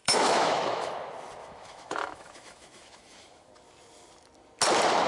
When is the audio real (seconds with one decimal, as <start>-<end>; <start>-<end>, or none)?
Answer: 0.9-1.4; 3.5-5.1

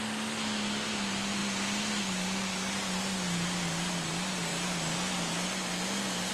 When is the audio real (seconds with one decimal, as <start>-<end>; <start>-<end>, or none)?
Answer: 0.0-6.3

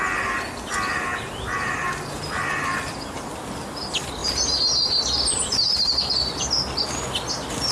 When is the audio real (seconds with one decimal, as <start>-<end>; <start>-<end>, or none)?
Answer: 0.0-7.7

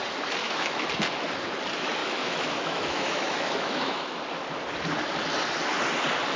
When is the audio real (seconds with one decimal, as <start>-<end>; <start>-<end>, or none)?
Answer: 0.0-0.4; 0.9-2.0; 4.2-6.4

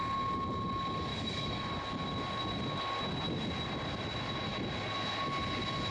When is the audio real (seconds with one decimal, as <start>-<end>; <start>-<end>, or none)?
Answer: 0.0-1.1; 1.7-5.9

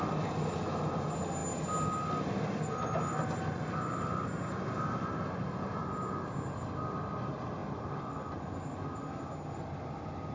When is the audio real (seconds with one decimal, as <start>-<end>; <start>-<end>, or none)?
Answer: 0.0-10.3

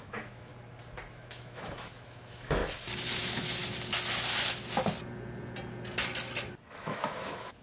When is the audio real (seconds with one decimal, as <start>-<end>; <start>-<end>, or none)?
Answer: 0.5-1.1; 2.6-3.2; 3.6-6.7